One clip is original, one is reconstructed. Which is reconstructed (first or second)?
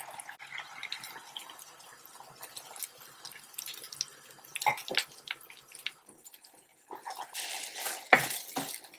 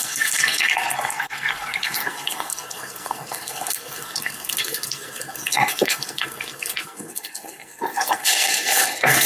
second